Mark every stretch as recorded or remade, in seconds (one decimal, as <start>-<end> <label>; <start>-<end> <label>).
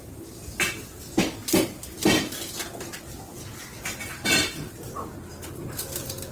0.0-4.5 recorded; 4.5-5.7 remade; 5.7-6.3 recorded